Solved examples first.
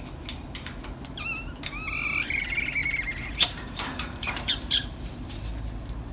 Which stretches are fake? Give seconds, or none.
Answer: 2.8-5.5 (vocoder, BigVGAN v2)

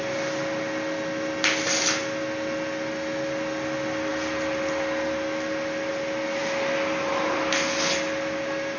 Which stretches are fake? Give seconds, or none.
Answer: none